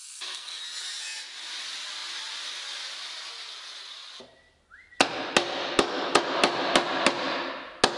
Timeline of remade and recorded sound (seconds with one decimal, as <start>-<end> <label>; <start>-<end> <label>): 0.0-0.6 remade; 0.6-8.0 recorded